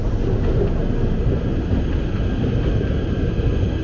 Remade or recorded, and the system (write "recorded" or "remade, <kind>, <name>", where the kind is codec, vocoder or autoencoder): recorded